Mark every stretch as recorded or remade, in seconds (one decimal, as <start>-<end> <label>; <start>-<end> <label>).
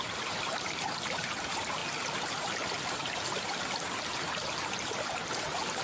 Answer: 0.0-1.8 remade; 1.8-5.3 recorded; 5.3-5.8 remade